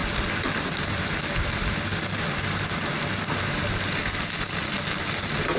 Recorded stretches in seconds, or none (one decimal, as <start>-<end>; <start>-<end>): 0.0-5.6